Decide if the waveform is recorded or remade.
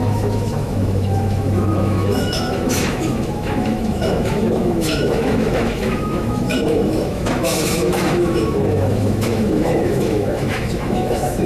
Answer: remade